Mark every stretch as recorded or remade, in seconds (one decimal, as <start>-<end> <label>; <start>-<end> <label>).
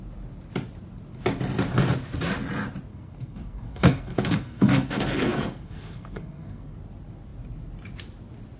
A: 0.0-2.9 recorded; 2.9-6.8 remade; 6.8-8.6 recorded